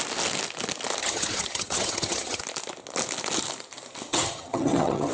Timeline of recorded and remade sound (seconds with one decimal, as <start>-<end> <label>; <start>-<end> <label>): 0.0-1.0 recorded; 1.0-2.4 remade; 2.4-4.1 recorded; 4.1-5.1 remade